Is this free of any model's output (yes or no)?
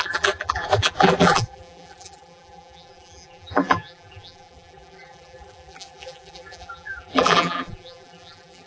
no